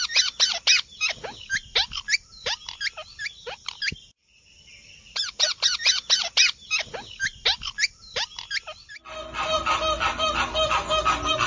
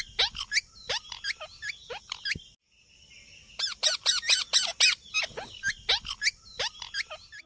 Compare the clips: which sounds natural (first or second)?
second